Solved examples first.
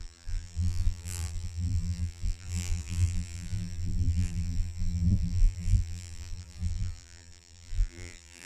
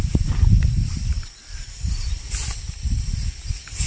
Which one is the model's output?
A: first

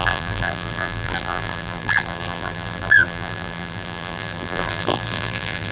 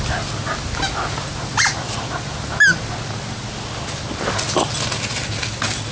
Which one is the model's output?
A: first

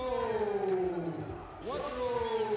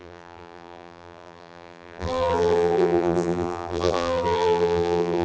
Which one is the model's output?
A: second